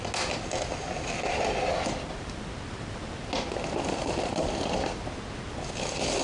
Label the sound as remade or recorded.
recorded